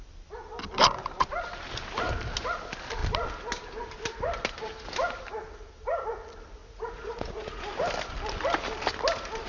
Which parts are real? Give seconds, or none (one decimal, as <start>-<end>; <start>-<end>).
0.0-6.6; 7.6-9.5